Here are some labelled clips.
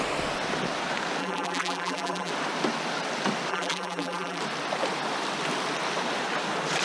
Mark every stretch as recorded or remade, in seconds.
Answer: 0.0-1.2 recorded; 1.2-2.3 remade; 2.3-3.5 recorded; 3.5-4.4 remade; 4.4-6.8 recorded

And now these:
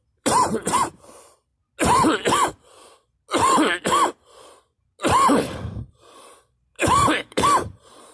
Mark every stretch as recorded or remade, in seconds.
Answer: 0.0-1.5 remade; 1.5-5.8 recorded; 5.8-8.1 remade

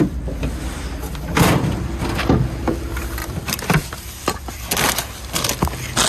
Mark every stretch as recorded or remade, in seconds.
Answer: 0.0-3.2 recorded; 3.2-4.5 remade; 4.5-6.1 recorded

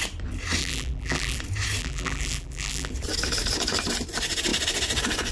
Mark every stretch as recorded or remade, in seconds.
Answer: 0.0-0.6 recorded; 0.6-1.4 remade; 1.4-1.8 recorded; 1.8-2.9 remade; 2.9-5.3 recorded

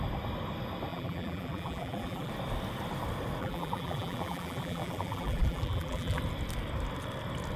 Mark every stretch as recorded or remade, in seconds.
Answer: 0.0-0.9 recorded; 0.9-2.3 remade; 2.3-3.4 recorded; 3.4-6.2 remade; 6.2-7.6 recorded

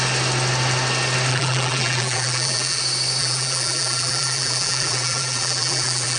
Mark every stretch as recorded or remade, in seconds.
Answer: 0.0-1.3 recorded; 1.3-2.8 remade; 2.8-3.2 recorded; 3.2-6.2 remade